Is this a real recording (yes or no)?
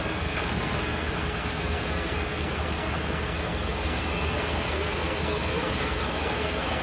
no